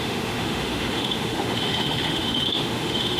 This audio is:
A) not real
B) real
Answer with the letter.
A